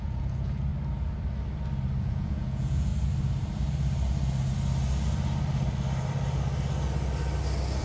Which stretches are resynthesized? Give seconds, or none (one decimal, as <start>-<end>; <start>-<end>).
0.0-0.7; 2.0-2.9